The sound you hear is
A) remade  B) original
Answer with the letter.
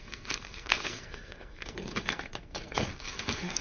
A